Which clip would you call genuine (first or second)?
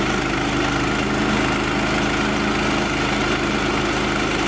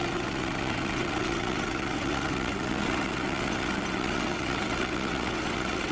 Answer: first